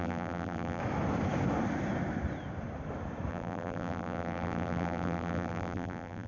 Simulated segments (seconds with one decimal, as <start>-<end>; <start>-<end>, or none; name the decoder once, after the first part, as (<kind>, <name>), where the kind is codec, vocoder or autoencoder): 0.0-0.8 (vocoder, BigVGAN v2); 3.3-6.3